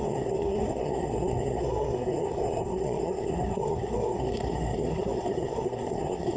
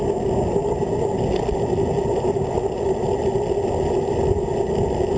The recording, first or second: second